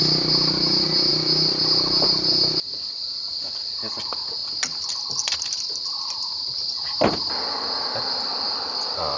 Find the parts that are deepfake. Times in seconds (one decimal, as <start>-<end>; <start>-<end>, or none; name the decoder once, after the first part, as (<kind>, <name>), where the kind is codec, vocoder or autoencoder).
none